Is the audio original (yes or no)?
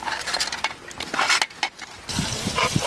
yes